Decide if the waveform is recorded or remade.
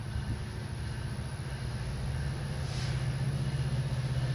recorded